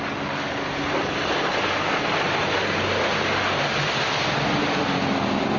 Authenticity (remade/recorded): recorded